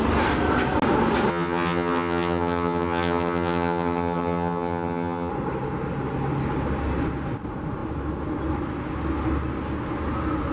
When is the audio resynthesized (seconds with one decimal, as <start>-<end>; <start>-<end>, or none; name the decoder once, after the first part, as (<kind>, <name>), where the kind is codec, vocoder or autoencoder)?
1.3-5.3 (vocoder, HiFi-GAN)